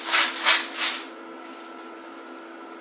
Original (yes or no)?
yes